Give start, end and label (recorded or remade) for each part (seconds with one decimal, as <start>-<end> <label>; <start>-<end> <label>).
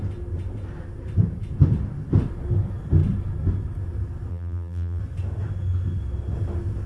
0.0-4.3 recorded; 4.3-5.0 remade; 5.0-6.9 recorded